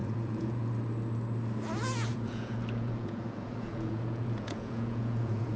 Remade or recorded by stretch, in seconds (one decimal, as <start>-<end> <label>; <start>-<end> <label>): 0.0-0.7 remade; 0.7-2.1 recorded; 2.1-5.6 remade